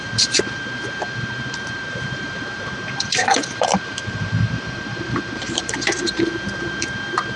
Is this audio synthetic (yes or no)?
yes